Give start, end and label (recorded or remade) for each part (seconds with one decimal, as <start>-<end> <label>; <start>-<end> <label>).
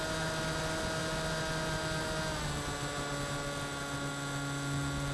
0.0-5.1 recorded